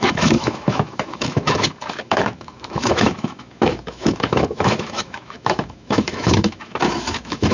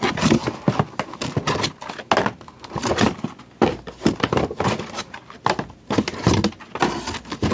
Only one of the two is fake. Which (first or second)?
first